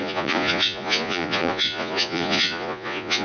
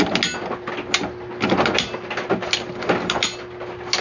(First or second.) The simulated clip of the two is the first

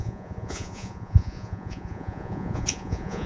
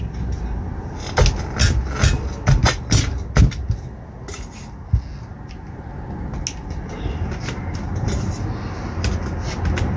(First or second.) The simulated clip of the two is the first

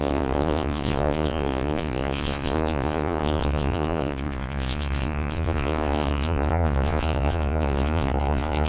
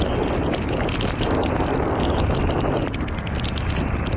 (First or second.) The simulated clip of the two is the first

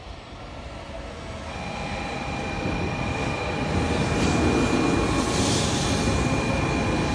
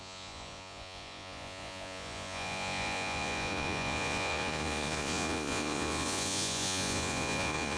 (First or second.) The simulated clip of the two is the second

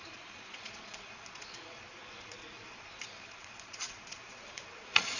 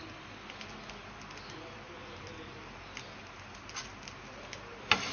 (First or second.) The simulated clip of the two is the first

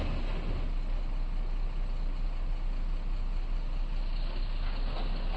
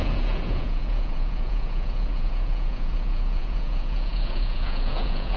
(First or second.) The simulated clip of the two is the second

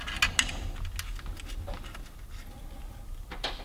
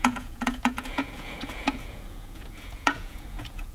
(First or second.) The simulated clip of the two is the second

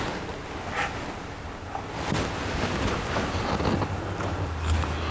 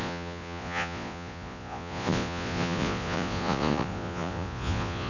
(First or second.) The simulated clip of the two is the second